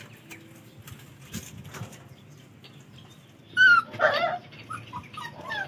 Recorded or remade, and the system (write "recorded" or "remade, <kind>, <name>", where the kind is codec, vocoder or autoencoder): recorded